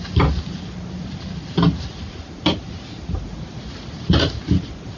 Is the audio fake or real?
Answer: real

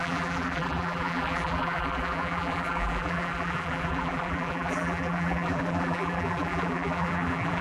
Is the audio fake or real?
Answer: fake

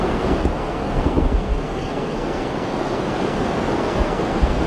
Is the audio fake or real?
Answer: fake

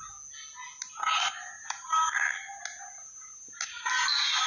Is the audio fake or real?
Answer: real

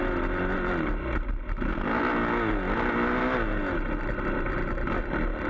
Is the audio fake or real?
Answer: real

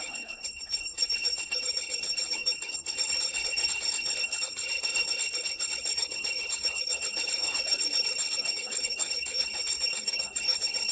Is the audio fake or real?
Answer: fake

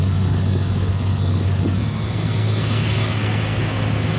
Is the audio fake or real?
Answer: fake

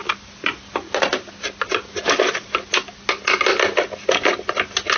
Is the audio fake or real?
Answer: real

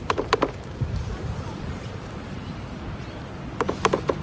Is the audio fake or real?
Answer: real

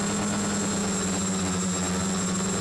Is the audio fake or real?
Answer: real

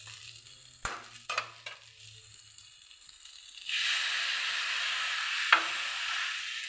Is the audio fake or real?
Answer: real